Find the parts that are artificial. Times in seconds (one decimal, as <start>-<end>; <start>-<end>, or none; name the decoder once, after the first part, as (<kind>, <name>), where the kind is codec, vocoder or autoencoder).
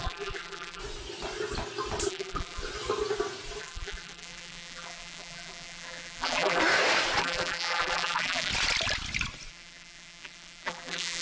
0.0-0.8 (vocoder, BigVGAN v2); 2.1-2.6; 3.6-6.6; 7.2-8.5; 9.5-11.2